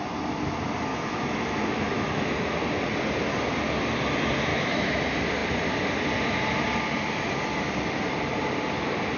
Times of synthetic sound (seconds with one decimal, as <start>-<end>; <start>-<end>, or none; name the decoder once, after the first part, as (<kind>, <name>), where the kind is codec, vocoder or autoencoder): 0.9-2.3 (autoencoder, DAC-VAE); 4.5-5.0